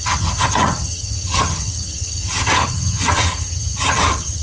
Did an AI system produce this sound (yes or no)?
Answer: yes